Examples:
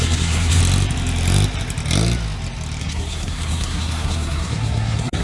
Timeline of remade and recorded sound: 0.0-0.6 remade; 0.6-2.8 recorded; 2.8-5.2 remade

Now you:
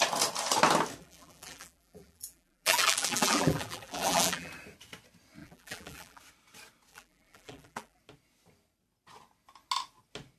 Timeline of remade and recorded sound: 0.0-1.0 recorded; 1.0-4.5 remade; 4.5-5.4 recorded; 5.4-6.2 remade; 6.2-6.9 recorded; 6.9-8.0 remade; 8.0-10.4 recorded

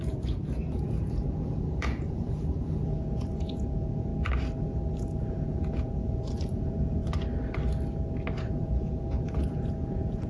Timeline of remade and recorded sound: 0.0-4.1 remade; 4.1-4.9 recorded; 4.9-7.0 remade; 7.0-8.4 recorded; 8.4-10.3 remade

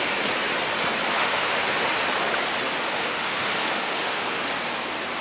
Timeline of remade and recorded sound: 0.0-1.2 recorded; 1.2-2.0 remade; 2.0-2.8 recorded; 2.8-4.5 remade; 4.5-5.2 recorded